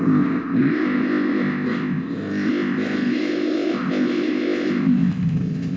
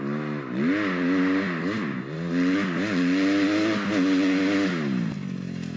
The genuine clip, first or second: second